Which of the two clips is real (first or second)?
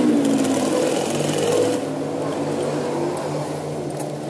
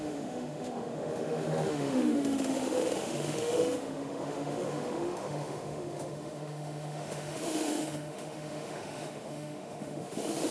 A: first